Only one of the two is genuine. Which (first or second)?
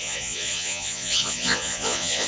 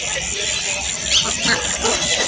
second